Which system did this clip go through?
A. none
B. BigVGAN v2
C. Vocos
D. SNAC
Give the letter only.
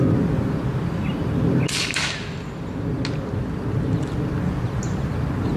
A